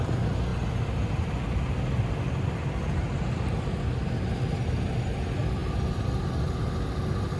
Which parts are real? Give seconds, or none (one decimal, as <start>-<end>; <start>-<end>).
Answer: 0.0-7.4